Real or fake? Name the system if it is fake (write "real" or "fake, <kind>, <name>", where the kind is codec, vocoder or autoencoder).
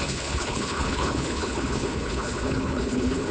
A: fake, codec, HILCodec